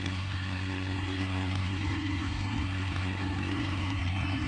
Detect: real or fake fake